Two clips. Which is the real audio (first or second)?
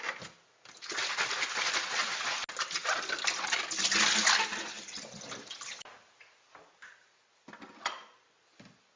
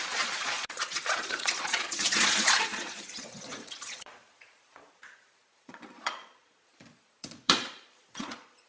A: first